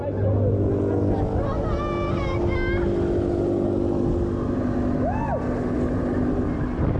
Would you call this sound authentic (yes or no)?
yes